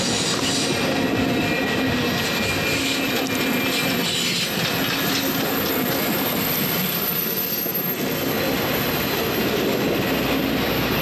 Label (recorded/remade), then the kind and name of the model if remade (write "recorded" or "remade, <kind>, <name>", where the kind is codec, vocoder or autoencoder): recorded